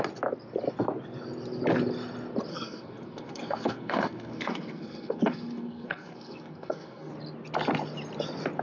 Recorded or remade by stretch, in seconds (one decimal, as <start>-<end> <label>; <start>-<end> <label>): 0.0-2.5 recorded; 2.5-7.1 remade; 7.1-8.6 recorded